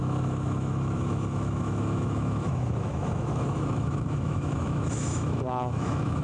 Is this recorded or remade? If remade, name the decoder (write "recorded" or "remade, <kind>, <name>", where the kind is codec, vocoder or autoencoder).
remade, autoencoder, DAC-VAE